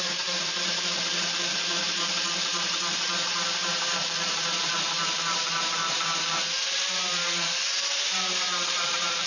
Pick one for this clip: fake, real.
fake